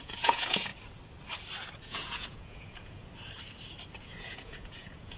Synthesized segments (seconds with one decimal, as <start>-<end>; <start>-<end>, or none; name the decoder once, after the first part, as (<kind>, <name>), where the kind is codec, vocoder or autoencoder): 0.0-0.7 (vocoder, Vocos); 1.8-3.0; 4.0-5.2